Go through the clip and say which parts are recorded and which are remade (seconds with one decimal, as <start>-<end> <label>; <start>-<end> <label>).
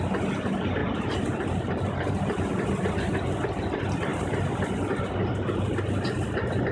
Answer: 0.0-0.8 recorded; 0.8-2.7 remade; 2.7-6.7 recorded